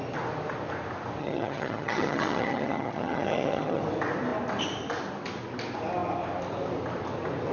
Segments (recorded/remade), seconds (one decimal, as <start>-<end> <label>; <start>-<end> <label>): 0.0-1.2 recorded; 1.2-3.8 remade; 3.8-7.5 recorded